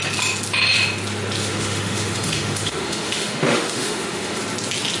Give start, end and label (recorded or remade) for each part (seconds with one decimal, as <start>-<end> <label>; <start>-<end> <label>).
0.0-1.4 recorded; 1.4-4.4 remade; 4.4-5.0 recorded